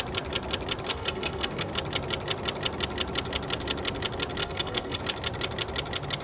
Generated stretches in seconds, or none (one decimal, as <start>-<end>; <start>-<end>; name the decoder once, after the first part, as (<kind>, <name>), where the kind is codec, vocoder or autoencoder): 0.9-1.7 (codec, SNAC); 4.4-5.0